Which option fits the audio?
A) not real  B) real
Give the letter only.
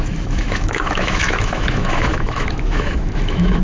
A